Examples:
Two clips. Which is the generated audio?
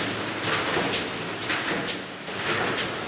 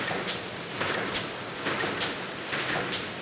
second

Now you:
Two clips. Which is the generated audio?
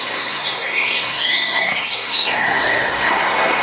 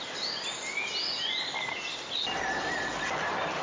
first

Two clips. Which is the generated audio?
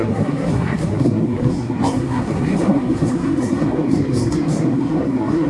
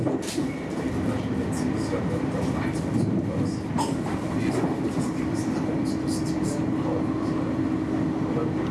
first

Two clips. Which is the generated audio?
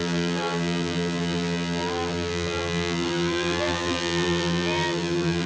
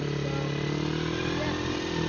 first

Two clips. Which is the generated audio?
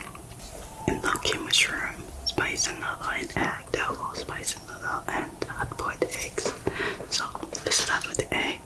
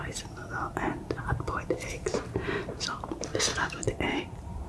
second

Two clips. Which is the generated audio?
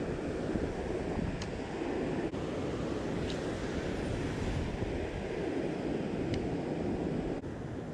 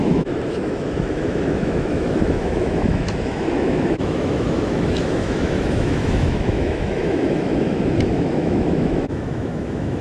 second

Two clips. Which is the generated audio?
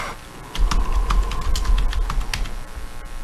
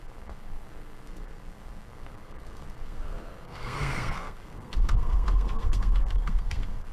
second